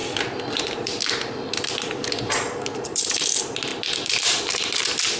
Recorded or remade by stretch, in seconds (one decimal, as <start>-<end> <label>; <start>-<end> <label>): 0.0-3.7 recorded; 3.7-4.4 remade; 4.4-5.2 recorded